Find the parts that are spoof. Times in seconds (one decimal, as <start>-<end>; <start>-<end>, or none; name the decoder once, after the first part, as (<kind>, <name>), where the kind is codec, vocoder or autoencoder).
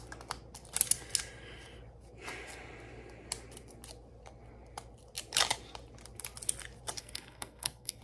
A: 7.0-8.0 (codec, SNAC)